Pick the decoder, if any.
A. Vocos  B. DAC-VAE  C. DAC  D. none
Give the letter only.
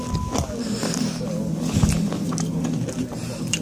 D